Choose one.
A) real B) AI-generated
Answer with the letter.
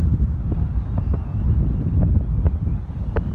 A